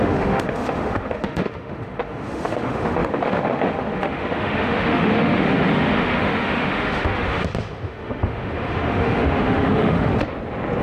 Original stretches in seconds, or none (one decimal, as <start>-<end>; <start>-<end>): 10.1-10.8